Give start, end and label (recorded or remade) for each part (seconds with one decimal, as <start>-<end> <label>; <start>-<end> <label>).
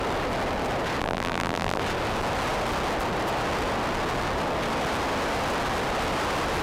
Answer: 0.0-1.0 recorded; 1.0-1.8 remade; 1.8-6.6 recorded